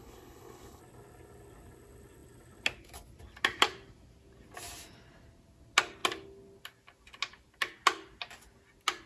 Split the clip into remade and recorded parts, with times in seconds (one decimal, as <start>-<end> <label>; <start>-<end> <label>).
0.0-0.8 remade; 0.8-9.1 recorded

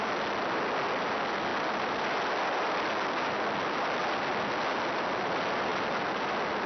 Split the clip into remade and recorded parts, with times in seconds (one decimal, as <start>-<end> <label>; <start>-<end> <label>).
0.0-6.7 recorded

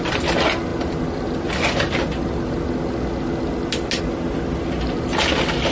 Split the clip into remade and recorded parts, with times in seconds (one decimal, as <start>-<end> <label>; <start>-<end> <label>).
0.0-5.7 recorded

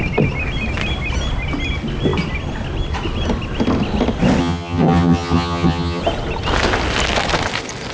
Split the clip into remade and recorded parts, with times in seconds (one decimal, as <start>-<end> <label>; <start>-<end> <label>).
0.0-4.4 recorded; 4.4-6.0 remade; 6.0-7.9 recorded

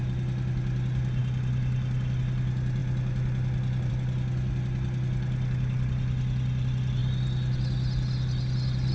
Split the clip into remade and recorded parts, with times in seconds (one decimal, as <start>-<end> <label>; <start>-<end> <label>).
0.0-8.9 recorded